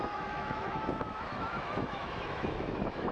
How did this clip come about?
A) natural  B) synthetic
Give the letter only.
B